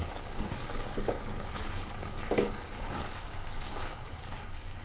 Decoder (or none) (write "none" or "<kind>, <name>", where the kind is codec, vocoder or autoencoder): codec, DAC